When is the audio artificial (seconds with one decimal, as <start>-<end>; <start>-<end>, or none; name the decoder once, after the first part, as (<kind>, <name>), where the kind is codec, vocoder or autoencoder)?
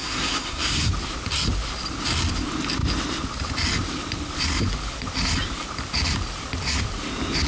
0.0-0.9 (codec, SNAC)